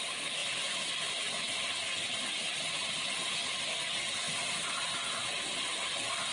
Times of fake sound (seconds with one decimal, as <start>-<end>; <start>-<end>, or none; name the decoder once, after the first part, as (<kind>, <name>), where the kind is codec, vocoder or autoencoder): none